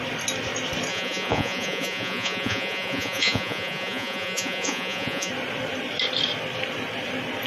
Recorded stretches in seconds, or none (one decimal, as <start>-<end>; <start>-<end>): 0.0-0.9; 5.3-7.5